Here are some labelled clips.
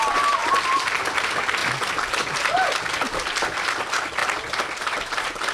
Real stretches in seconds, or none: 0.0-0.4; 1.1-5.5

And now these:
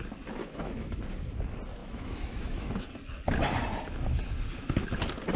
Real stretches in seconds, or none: 0.0-0.4; 1.0-1.8; 2.9-5.4

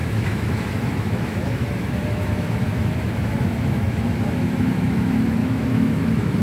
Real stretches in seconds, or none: none